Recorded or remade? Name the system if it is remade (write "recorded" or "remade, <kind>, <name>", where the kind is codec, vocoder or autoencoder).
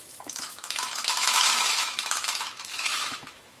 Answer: remade, autoencoder, DAC-VAE